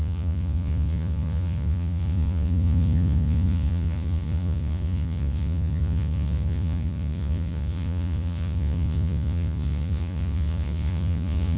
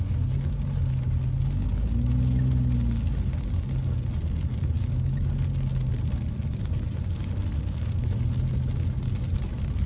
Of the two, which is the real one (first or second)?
second